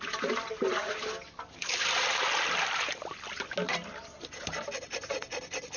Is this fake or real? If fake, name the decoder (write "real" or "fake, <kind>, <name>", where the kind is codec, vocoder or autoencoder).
real